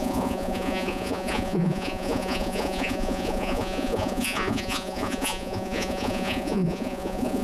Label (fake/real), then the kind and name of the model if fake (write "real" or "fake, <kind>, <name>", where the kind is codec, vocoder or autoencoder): fake, vocoder, Vocos